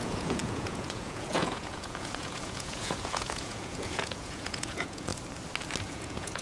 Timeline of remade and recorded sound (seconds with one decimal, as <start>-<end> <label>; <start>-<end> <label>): 0.0-5.1 remade; 5.1-5.9 recorded; 5.9-6.4 remade